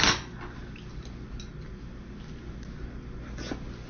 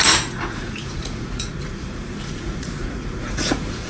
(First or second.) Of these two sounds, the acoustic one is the first